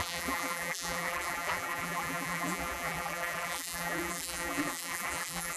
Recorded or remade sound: remade